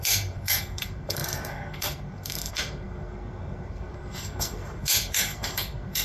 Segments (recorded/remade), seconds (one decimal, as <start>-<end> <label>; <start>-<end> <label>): 0.0-6.0 remade